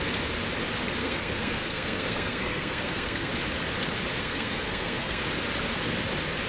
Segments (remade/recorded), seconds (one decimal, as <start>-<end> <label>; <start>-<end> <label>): 0.0-1.0 recorded; 1.0-3.3 remade; 3.3-4.2 recorded; 4.2-5.2 remade; 5.2-6.5 recorded